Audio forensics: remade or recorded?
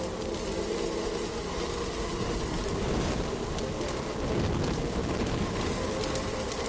recorded